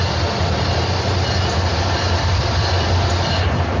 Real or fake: real